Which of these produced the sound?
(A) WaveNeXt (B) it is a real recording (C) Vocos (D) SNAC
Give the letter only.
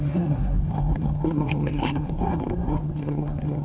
D